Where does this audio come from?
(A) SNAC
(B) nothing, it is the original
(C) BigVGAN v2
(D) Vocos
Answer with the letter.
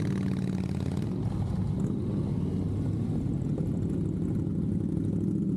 B